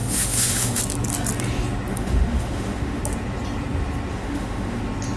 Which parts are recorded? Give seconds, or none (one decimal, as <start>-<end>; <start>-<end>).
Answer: 0.8-1.9; 3.0-4.1; 4.8-5.2